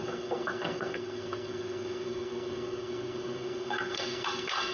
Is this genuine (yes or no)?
no